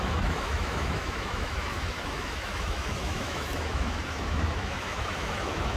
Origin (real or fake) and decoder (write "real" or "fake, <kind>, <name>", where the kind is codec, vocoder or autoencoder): fake, autoencoder, DAC-VAE